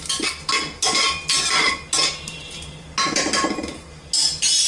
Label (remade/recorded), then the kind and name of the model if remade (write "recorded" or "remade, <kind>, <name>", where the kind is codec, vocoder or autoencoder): recorded